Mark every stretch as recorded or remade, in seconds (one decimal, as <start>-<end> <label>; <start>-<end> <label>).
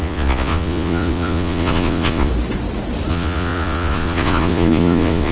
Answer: 0.0-2.3 remade; 2.3-3.1 recorded; 3.1-5.3 remade